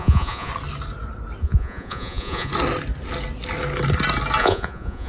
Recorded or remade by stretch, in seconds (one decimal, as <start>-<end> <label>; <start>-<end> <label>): 0.0-0.5 remade; 0.5-1.4 recorded; 1.4-2.5 remade; 2.5-4.4 recorded; 4.4-5.1 remade